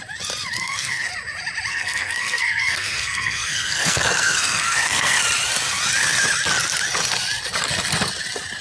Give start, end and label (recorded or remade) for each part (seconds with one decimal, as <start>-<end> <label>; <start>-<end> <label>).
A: 0.0-0.6 recorded; 0.6-1.1 remade; 1.1-1.7 recorded; 1.7-5.2 remade; 5.2-8.6 recorded